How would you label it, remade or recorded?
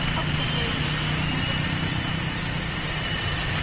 recorded